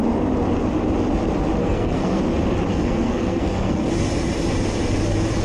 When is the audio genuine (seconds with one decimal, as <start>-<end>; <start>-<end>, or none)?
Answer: 0.0-1.6; 2.2-2.7; 3.9-5.4